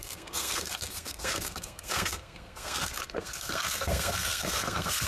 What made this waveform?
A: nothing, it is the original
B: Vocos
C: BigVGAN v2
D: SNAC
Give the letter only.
D